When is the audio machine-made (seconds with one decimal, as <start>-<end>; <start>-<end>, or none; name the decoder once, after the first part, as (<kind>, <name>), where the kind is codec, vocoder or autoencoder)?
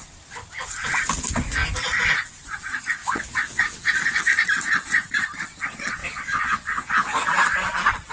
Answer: 3.0-3.6 (vocoder, Vocos); 6.0-7.3